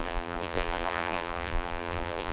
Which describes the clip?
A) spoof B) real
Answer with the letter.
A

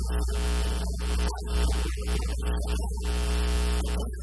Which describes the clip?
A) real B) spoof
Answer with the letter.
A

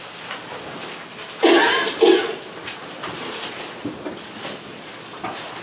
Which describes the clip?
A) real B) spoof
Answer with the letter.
A